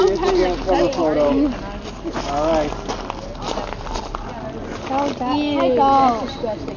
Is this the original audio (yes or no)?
yes